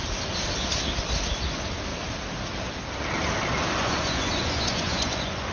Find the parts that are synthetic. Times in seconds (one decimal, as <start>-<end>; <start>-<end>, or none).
3.8-5.5